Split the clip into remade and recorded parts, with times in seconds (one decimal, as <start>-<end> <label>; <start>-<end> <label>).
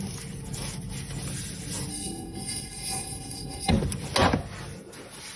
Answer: 0.0-1.9 recorded; 1.9-3.7 remade; 3.7-5.4 recorded